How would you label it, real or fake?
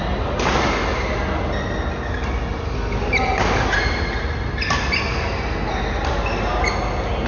real